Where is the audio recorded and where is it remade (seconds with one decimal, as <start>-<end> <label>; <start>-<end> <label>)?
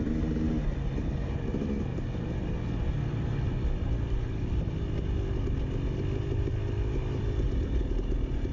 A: 0.0-8.5 recorded